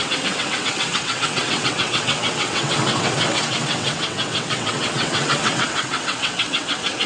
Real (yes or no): no